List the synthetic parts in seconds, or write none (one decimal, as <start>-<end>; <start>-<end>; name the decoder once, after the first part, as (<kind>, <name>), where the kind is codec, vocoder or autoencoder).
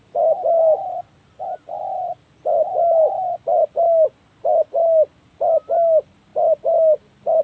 none